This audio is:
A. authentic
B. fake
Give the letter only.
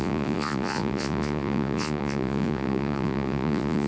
B